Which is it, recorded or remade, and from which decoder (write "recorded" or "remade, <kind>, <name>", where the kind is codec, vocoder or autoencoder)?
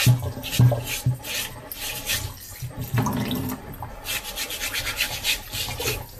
recorded